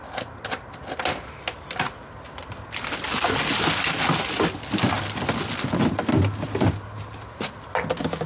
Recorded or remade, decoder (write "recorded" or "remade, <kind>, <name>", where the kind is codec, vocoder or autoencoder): recorded